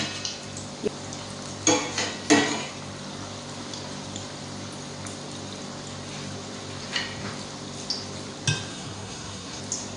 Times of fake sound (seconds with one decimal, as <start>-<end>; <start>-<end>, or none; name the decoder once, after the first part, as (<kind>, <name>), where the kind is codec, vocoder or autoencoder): 8.7-9.6 (codec, SNAC)